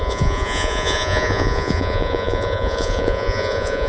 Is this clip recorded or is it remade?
remade